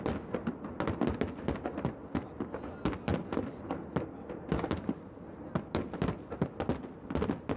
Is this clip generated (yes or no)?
no